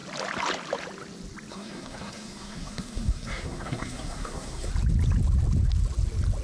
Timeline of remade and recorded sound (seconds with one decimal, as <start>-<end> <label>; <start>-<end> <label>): 0.0-1.5 recorded; 1.5-4.7 remade; 4.7-6.4 recorded